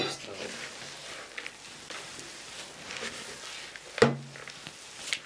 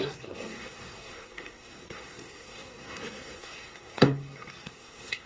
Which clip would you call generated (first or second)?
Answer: second